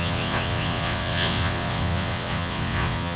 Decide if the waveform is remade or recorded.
remade